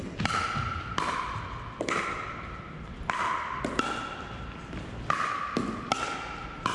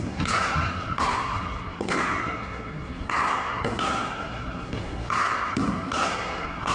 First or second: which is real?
first